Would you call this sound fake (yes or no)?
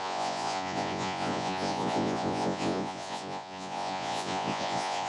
yes